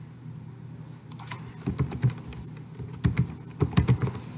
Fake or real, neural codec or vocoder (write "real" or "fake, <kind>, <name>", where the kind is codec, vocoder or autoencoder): real